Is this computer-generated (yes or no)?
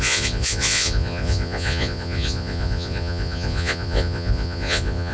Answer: yes